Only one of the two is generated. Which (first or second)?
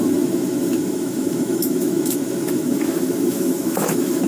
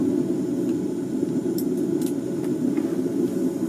first